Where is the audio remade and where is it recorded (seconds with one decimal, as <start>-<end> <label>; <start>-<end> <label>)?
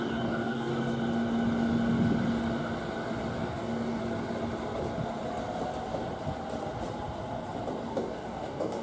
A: 0.0-0.7 remade; 0.7-3.5 recorded; 3.5-4.0 remade; 4.0-7.9 recorded; 7.9-8.8 remade